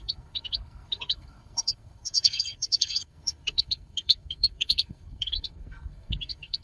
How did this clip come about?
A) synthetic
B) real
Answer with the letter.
A